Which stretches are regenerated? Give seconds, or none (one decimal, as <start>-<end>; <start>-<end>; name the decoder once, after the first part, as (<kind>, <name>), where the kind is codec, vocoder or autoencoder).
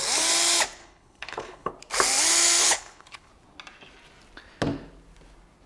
0.8-1.7 (codec, HILCodec); 2.6-3.3